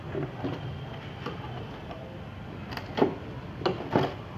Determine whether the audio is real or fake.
real